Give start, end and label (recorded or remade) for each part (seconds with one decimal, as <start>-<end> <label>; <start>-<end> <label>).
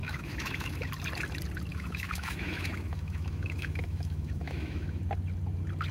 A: 0.0-0.9 remade; 0.9-1.7 recorded; 1.7-5.0 remade; 5.0-5.9 recorded